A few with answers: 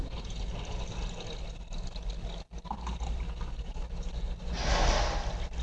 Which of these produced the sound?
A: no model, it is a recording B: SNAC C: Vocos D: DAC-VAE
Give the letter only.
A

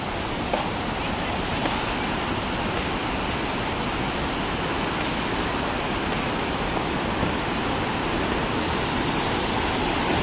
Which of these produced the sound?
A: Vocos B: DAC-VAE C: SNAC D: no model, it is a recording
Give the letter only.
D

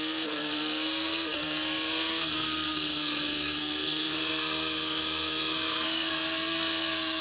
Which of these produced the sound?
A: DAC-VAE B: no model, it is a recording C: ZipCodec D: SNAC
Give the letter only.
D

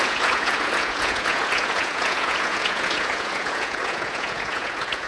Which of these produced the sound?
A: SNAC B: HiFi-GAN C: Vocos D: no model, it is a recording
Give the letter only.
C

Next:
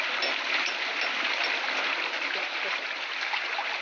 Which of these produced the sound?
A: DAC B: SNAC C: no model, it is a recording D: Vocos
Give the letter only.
C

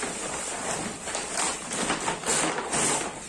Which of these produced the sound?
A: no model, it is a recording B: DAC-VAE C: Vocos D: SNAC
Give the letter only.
A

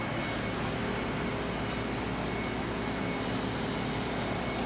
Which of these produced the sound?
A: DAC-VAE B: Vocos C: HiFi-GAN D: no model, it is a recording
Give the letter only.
D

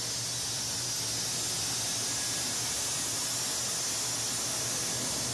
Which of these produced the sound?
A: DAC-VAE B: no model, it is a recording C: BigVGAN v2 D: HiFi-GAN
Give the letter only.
B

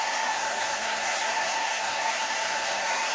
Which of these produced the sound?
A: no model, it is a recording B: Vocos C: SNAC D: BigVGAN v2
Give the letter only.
C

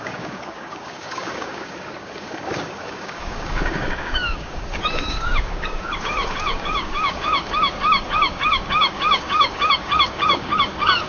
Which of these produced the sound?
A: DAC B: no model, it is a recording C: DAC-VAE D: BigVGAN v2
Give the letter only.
A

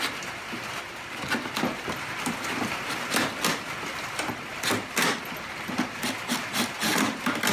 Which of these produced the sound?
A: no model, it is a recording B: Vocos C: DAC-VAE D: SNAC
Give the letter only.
A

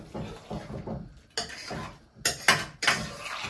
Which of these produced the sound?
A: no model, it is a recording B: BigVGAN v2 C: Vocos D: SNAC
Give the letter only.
A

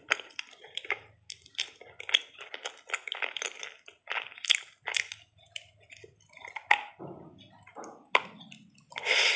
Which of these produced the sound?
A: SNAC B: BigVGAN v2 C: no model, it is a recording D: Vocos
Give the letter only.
C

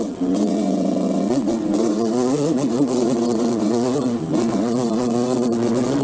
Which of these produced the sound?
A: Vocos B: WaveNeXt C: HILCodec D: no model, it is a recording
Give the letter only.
B